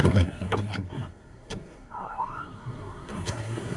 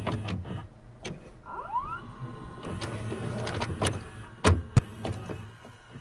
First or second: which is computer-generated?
first